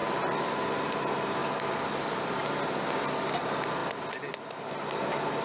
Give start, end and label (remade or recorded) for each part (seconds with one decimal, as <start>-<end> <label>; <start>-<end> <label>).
0.0-1.4 remade; 1.4-2.0 recorded; 2.0-2.4 remade; 2.4-3.4 recorded; 3.4-5.4 remade